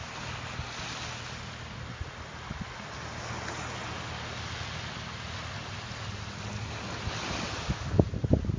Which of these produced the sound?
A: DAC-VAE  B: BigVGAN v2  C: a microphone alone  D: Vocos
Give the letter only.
C